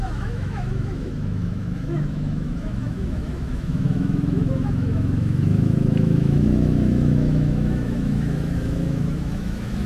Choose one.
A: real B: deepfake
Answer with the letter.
B